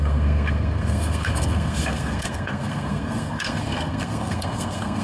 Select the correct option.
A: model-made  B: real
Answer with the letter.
A